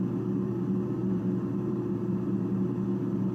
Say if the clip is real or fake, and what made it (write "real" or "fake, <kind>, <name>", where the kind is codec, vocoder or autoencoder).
fake, vocoder, BigVGAN v2